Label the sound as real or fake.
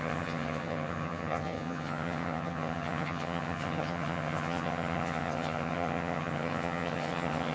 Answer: fake